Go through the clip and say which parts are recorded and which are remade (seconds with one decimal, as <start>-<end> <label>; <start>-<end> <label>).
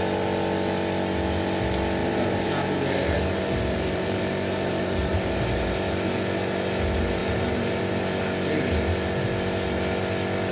0.0-2.0 recorded; 2.0-5.6 remade; 5.6-7.2 recorded; 7.2-7.8 remade; 7.8-10.5 recorded